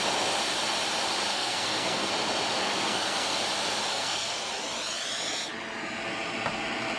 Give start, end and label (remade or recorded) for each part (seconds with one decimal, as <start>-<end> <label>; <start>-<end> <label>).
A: 0.0-1.3 recorded; 1.3-2.1 remade; 2.1-2.6 recorded; 2.6-3.4 remade; 3.4-3.9 recorded; 3.9-4.5 remade; 4.5-7.0 recorded